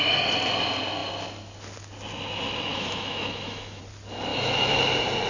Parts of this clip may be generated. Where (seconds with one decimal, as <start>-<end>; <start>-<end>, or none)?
2.7-3.8; 4.3-4.8